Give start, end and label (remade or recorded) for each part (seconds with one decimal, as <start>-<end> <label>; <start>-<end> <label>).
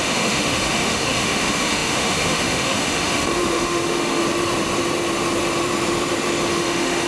0.0-4.2 remade; 4.2-6.5 recorded; 6.5-7.1 remade